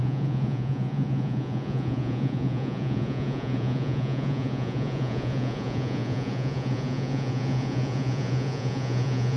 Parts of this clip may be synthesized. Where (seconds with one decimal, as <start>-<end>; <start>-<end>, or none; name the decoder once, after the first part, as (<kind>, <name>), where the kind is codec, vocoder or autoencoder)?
0.0-9.4 (vocoder, Vocos)